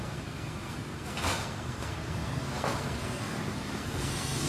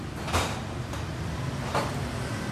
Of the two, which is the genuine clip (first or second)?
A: second